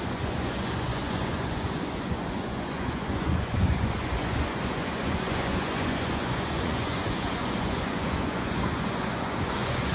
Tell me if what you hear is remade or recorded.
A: remade